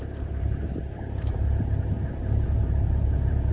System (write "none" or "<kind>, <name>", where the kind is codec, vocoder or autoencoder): vocoder, BigVGAN v2